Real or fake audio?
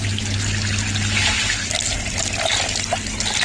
real